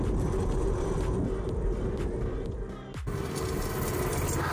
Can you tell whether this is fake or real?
real